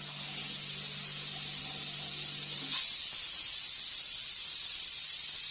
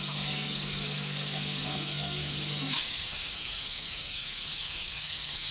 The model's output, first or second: second